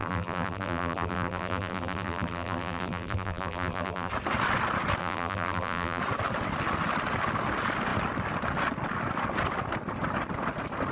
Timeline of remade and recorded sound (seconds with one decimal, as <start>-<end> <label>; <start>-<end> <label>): 0.0-4.1 remade; 4.1-5.0 recorded; 5.0-6.0 remade; 6.0-10.9 recorded